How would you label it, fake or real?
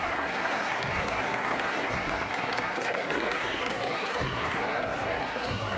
fake